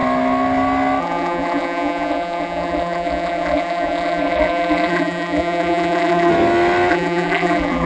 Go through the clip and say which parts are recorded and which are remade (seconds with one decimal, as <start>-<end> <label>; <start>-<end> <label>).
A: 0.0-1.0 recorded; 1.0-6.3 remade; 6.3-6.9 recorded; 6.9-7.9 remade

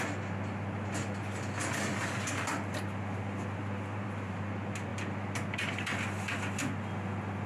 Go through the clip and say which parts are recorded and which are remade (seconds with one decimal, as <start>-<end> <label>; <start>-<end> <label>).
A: 0.0-3.6 recorded; 3.6-4.4 remade; 4.4-7.5 recorded

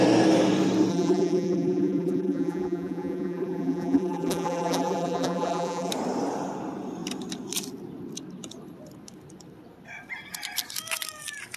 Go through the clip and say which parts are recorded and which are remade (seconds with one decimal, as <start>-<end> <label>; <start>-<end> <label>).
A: 0.0-0.9 recorded; 0.9-5.9 remade; 5.9-11.6 recorded